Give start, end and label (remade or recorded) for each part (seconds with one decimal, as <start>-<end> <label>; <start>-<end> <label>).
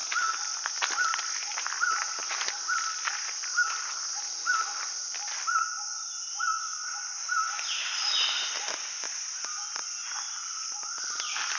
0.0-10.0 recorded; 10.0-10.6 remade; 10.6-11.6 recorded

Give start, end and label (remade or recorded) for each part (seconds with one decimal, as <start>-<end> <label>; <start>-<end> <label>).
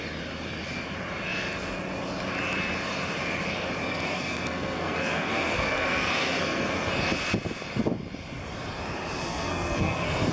0.0-3.9 recorded; 3.9-6.9 remade; 6.9-9.2 recorded; 9.2-10.3 remade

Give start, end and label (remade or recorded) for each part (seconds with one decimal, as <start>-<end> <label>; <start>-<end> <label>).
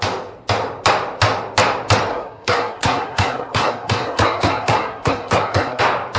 0.0-2.1 recorded; 2.1-5.8 remade; 5.8-6.2 recorded